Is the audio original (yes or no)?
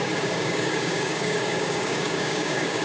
no